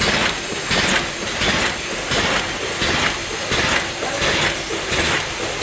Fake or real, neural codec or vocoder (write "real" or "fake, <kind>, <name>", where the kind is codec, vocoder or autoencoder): real